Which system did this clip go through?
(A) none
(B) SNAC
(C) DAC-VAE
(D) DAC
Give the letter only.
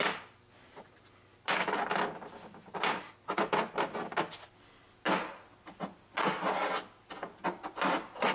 A